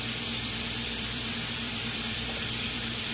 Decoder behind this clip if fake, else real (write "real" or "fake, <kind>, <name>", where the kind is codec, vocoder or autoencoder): fake, vocoder, BigVGAN v2